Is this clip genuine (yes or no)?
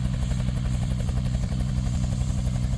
no